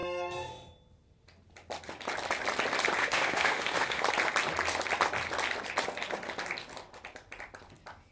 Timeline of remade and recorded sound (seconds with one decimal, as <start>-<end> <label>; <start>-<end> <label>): 0.0-3.0 recorded; 3.0-4.0 remade; 4.0-8.1 recorded